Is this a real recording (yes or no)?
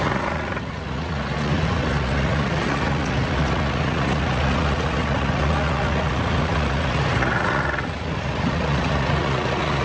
no